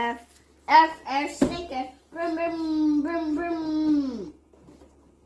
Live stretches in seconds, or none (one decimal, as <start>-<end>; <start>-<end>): 0.0-5.3